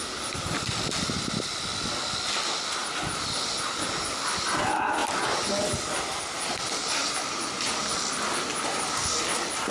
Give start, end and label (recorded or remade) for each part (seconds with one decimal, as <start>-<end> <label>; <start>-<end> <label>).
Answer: 0.0-9.7 recorded